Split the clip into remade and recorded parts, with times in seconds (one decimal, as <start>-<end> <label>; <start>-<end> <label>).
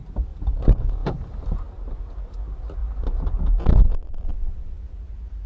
0.0-1.0 recorded; 1.0-1.6 remade; 1.6-5.5 recorded